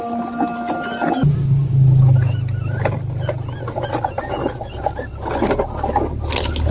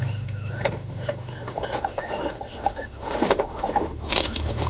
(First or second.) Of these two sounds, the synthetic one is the second